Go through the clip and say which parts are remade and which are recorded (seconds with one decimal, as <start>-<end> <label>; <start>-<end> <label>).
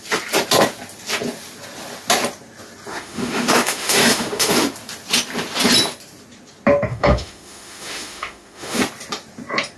0.0-2.9 recorded; 2.9-4.5 remade; 4.5-6.9 recorded; 6.9-8.8 remade; 8.8-9.8 recorded